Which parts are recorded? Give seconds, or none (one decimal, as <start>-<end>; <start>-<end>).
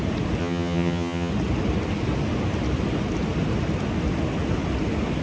0.0-0.4; 1.3-5.2